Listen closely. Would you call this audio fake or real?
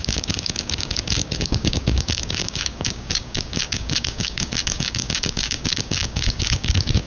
fake